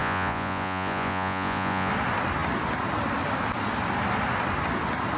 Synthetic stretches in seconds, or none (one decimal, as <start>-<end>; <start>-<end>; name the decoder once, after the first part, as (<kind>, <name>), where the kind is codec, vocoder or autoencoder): 0.0-1.9 (vocoder, Vocos)